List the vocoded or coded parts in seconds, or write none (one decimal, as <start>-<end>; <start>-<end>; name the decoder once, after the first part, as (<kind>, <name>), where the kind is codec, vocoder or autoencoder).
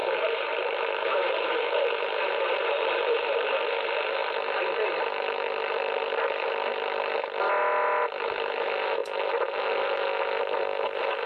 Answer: 0.0-2.7 (vocoder, BigVGAN v2)